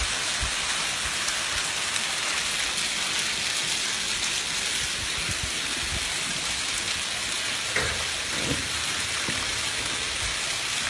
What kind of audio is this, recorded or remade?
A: recorded